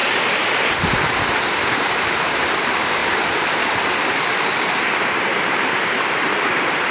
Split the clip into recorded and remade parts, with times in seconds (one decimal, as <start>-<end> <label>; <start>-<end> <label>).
0.0-3.0 remade; 3.0-4.8 recorded; 4.8-5.3 remade; 5.3-6.1 recorded; 6.1-6.9 remade